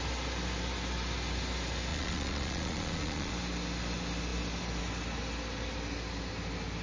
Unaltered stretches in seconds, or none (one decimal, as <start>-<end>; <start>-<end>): 0.0-1.9; 3.3-6.8